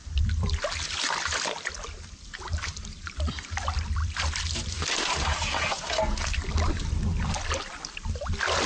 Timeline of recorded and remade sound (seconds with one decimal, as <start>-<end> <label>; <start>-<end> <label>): 0.0-0.8 remade; 0.8-8.7 recorded